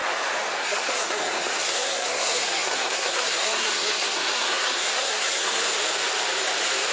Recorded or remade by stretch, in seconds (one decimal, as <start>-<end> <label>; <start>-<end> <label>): 0.0-0.6 recorded; 0.6-5.6 remade; 5.6-6.9 recorded